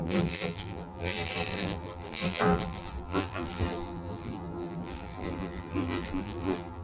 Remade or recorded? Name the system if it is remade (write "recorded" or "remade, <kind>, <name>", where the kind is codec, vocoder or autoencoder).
remade, vocoder, BigVGAN v2